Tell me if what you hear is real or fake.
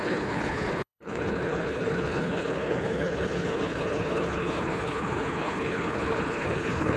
fake